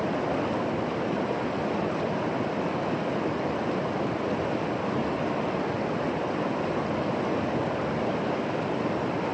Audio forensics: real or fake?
real